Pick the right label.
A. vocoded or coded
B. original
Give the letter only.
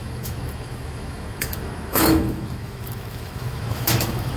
A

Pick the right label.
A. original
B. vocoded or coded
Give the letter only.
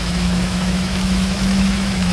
B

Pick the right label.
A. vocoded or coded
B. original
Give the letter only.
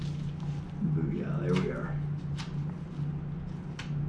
B